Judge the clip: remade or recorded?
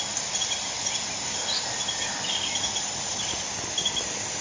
recorded